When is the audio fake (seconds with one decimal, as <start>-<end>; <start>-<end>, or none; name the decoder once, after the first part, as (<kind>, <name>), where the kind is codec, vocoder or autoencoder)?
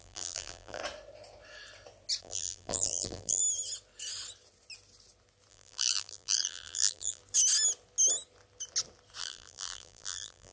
0.0-0.8 (vocoder, BigVGAN v2); 2.2-3.4; 5.5-7.2; 9.2-10.5